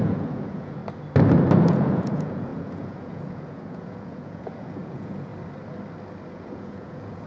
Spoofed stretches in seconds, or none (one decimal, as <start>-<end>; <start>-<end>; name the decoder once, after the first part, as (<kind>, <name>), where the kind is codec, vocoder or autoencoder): 0.0-0.8 (vocoder, Vocos); 1.6-5.3; 6.3-7.3